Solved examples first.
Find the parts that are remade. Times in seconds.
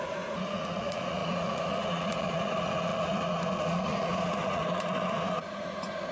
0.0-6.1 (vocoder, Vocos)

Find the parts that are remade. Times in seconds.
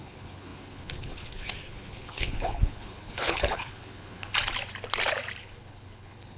0.0-4.3 (codec, HILCodec); 5.4-6.4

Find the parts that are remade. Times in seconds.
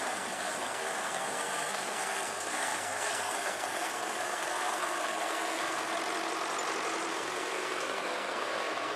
0.0-5.9 (codec, SNAC); 7.1-9.0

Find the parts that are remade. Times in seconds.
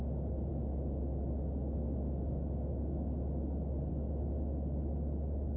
none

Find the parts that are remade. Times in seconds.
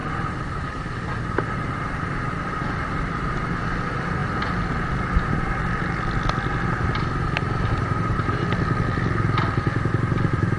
none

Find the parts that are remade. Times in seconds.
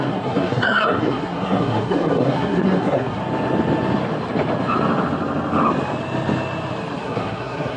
0.0-3.2 (codec, SNAC); 7.0-7.8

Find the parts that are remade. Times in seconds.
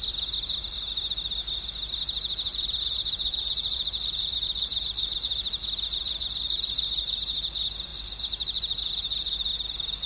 2.5-6.6 (vocoder, BigVGAN v2); 7.9-8.9